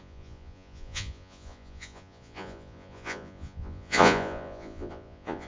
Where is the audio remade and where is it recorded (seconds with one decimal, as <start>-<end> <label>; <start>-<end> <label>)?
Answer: 0.0-5.5 remade